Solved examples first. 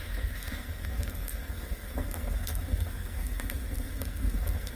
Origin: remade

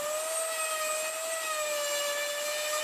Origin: recorded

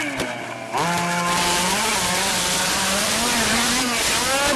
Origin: recorded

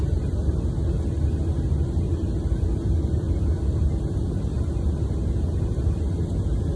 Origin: recorded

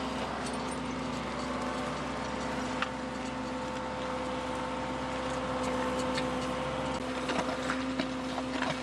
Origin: recorded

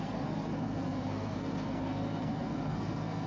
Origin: remade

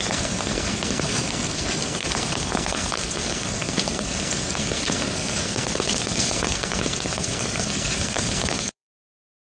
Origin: remade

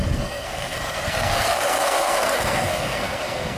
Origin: remade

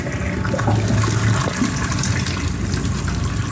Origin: recorded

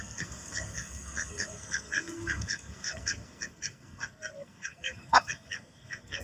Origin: remade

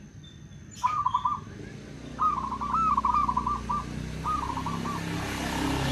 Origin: recorded